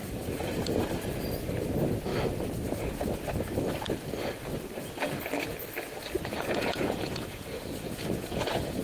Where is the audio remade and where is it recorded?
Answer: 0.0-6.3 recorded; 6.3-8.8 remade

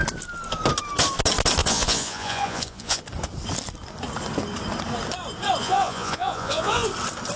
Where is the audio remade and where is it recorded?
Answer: 0.0-1.6 recorded; 1.6-3.0 remade; 3.0-5.6 recorded; 5.6-6.9 remade; 6.9-7.4 recorded

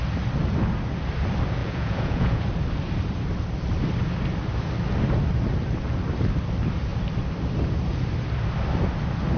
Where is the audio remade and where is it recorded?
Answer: 0.0-1.6 recorded; 1.6-2.4 remade; 2.4-9.4 recorded

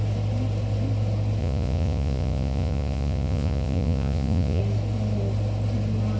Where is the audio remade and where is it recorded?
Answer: 0.0-1.4 recorded; 1.4-4.6 remade; 4.6-6.2 recorded

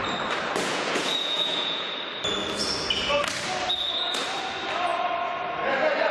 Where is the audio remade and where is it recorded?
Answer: 0.0-0.6 recorded; 0.6-1.9 remade; 1.9-6.1 recorded

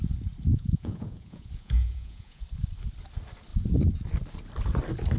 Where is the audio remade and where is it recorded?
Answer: 0.0-0.5 recorded; 0.5-2.4 remade; 2.4-5.2 recorded

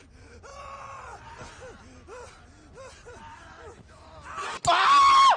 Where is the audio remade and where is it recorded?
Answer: 0.0-0.5 recorded; 0.5-1.3 remade; 1.3-5.4 recorded